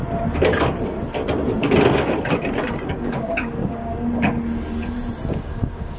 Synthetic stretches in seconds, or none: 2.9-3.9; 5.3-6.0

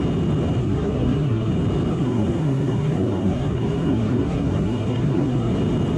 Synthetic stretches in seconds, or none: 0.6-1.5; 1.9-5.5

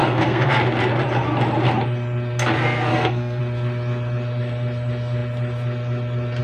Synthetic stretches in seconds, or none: 0.0-0.5; 2.9-3.4

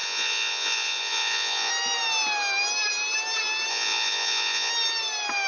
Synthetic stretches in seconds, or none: 0.0-1.7; 3.7-4.7

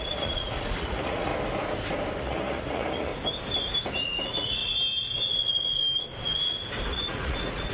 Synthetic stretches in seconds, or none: 0.0-1.3; 2.2-3.1; 3.9-4.6; 5.3-5.8; 6.9-7.7